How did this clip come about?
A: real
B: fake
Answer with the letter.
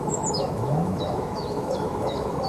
B